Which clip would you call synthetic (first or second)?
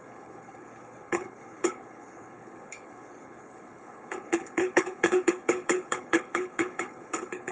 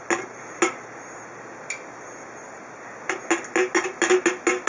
first